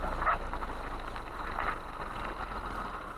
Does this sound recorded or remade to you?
recorded